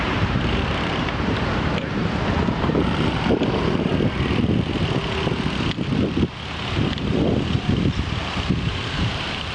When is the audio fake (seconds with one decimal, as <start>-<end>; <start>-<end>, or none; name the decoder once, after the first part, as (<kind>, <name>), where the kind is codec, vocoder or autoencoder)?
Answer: 0.0-3.9 (vocoder, BigVGAN v2); 7.8-9.5